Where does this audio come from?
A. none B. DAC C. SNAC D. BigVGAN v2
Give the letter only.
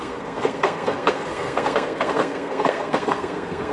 C